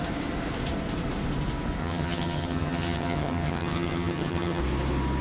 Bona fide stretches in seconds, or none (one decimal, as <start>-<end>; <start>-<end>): 0.0-1.8; 4.6-5.2